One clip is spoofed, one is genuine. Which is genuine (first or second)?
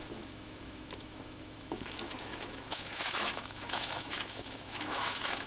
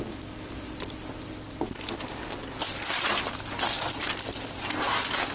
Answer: second